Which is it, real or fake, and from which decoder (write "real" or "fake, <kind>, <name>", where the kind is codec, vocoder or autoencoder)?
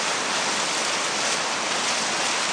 real